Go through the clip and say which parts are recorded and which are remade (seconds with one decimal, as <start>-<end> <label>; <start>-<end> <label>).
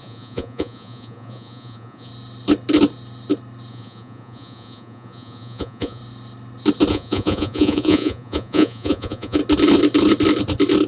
0.0-2.1 remade; 2.1-3.7 recorded; 3.7-6.0 remade; 6.0-6.9 recorded; 6.9-9.4 remade; 9.4-10.9 recorded